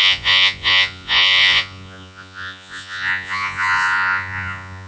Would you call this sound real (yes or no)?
no